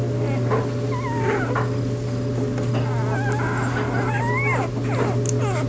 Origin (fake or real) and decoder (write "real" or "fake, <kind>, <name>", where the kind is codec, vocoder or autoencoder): real